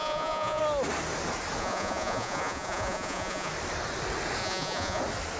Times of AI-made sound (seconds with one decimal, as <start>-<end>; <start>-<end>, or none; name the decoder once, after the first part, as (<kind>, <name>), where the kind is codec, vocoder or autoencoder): 0.0-0.6 (vocoder, Vocos); 1.6-3.5; 4.4-5.0